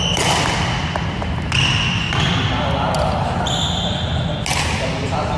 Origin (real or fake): real